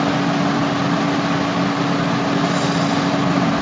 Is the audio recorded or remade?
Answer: recorded